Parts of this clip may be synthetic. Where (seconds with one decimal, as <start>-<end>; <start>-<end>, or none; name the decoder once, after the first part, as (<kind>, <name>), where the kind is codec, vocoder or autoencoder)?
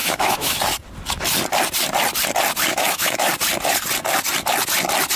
0.0-0.6 (autoencoder, DAC-VAE); 2.7-3.3